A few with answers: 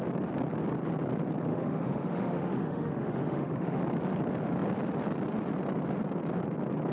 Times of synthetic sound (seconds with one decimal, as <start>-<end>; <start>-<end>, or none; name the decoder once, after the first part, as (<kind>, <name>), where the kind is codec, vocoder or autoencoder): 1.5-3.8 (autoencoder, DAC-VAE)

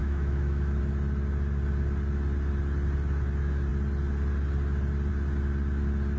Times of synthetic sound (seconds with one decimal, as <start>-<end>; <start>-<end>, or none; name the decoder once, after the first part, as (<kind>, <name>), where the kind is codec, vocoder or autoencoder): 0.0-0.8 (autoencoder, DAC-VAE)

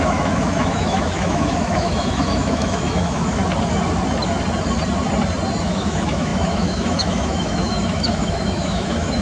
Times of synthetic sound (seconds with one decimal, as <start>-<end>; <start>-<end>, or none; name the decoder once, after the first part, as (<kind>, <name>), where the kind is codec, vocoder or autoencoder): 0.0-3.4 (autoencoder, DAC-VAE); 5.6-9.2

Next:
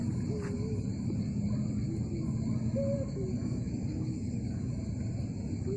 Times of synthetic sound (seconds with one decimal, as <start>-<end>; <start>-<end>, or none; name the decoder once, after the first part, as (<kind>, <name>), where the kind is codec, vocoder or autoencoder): 3.4-4.8 (autoencoder, DAC-VAE)

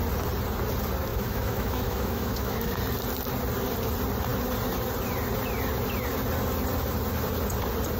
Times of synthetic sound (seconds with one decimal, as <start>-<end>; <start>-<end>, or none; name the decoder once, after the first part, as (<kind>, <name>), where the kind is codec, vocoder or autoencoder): 1.1-2.7 (autoencoder, DAC-VAE)

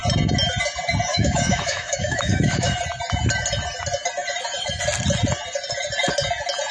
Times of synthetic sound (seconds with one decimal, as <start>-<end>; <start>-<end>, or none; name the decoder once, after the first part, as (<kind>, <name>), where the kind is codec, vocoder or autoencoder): 1.1-2.8 (autoencoder, DAC-VAE)